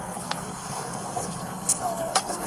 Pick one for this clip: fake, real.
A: fake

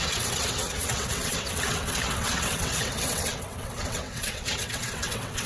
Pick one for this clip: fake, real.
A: fake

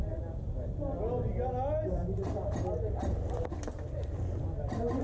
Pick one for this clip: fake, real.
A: real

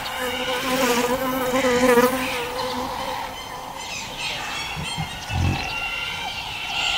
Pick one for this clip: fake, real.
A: real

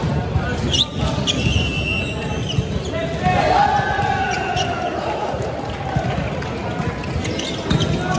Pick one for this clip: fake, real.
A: real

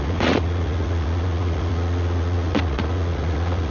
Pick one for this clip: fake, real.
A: fake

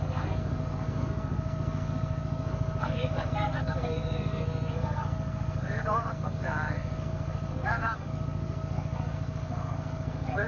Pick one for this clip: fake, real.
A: fake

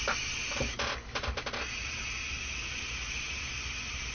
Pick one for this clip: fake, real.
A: real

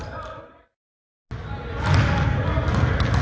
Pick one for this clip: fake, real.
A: real